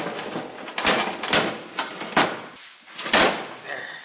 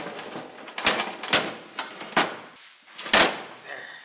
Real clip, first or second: second